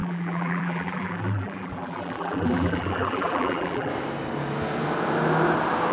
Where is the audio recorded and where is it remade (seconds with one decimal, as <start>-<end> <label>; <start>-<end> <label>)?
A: 0.0-3.9 remade; 3.9-5.9 recorded